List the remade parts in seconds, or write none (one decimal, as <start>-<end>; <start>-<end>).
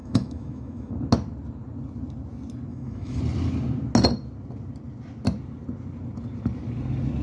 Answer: 0.0-0.9; 2.7-3.2